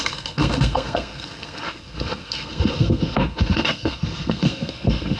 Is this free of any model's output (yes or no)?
no